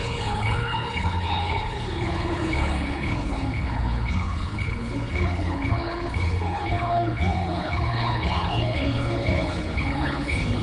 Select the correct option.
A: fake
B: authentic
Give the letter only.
A